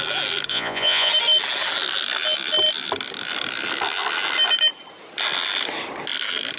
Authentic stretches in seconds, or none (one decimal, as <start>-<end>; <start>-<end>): 0.0-0.5; 1.1-6.6